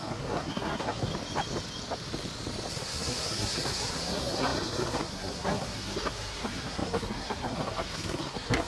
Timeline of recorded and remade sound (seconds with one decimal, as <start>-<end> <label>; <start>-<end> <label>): 0.0-1.1 remade; 1.1-2.7 recorded; 2.7-8.7 remade